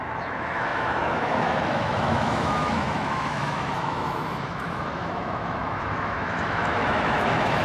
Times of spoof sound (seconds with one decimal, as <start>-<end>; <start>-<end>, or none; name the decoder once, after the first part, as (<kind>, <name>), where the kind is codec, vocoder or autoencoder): 0.0-7.6 (autoencoder, DAC-VAE)